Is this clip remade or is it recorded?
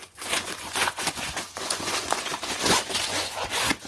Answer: remade